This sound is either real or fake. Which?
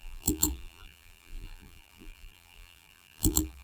fake